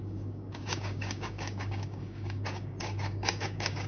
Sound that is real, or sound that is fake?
fake